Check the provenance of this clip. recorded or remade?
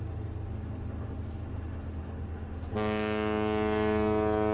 recorded